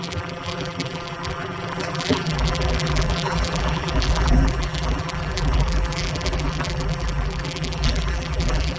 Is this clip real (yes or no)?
no